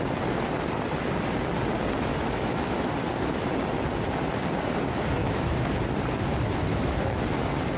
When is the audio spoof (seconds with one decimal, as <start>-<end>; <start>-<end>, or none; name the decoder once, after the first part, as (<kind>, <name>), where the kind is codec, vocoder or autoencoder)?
2.1-2.9 (autoencoder, DAC-VAE); 5.2-5.8; 6.7-7.2